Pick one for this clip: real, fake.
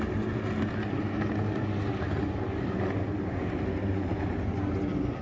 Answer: real